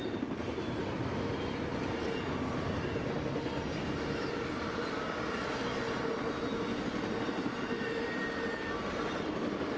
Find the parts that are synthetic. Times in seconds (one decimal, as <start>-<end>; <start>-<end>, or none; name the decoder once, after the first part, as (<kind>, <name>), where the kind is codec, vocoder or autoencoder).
none